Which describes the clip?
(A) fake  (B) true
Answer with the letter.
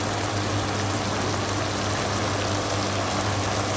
B